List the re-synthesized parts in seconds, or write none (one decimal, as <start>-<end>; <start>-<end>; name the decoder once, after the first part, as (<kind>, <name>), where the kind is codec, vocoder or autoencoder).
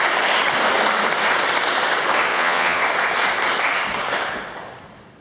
2.3-2.8 (vocoder, Vocos)